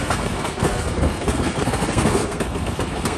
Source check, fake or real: fake